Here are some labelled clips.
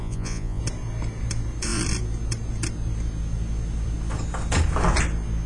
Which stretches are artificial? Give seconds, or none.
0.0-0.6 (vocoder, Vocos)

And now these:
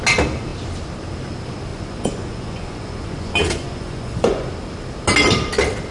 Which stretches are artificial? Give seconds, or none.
1.7-4.5 (vocoder, Vocos)

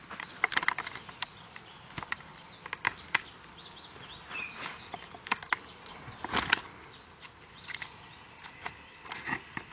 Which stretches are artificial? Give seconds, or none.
none

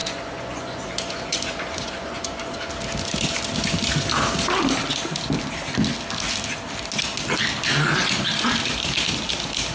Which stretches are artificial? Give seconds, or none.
0.0-2.7 (vocoder, Vocos)

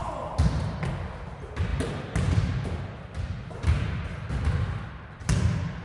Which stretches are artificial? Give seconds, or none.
none

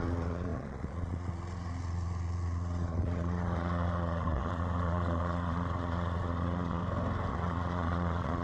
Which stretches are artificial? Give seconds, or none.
0.0-6.8 (vocoder, Vocos); 7.3-8.4

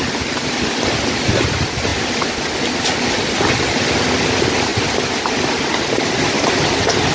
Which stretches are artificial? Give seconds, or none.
none